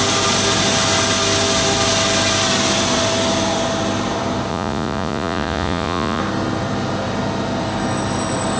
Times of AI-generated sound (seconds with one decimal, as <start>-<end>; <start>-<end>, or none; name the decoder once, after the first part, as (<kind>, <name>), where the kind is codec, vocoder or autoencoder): 4.5-6.2 (vocoder, Vocos)